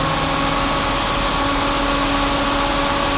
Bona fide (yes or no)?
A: yes